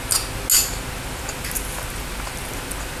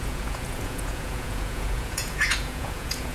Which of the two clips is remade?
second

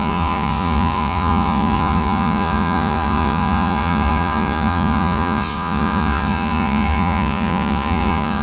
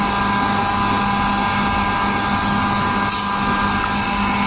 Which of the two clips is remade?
first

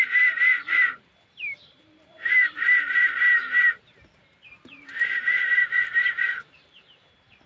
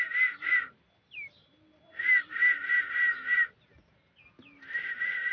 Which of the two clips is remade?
first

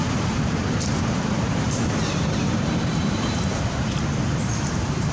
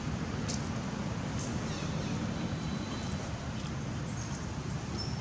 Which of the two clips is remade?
first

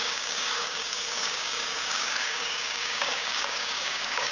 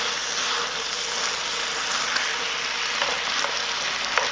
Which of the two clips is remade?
first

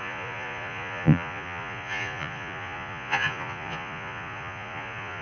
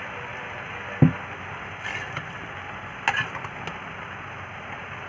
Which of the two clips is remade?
first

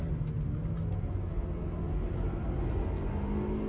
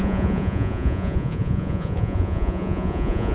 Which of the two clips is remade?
second